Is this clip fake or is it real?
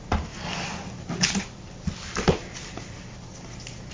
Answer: real